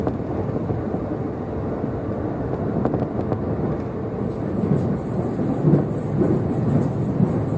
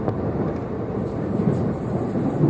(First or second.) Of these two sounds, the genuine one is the first